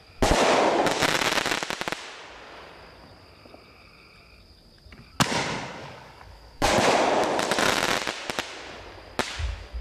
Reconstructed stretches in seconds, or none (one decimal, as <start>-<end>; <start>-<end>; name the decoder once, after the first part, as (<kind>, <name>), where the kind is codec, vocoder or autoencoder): 5.8-6.8 (codec, DAC)